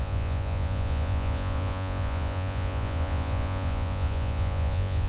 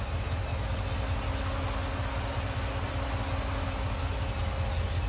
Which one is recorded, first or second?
second